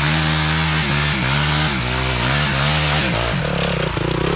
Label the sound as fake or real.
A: real